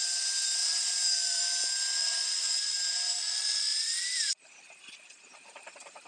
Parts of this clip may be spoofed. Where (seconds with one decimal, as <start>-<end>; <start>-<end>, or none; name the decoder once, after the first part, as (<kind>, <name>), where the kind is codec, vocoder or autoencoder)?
0.6-1.4 (vocoder, BigVGAN v2); 3.7-4.3